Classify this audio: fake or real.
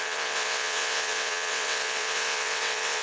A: fake